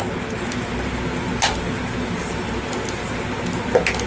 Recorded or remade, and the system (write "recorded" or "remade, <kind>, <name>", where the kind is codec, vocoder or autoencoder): recorded